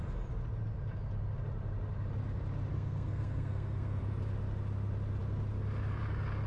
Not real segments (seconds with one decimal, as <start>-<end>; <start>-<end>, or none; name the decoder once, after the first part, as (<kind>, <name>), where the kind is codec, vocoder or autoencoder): 2.7-4.0 (codec, SNAC)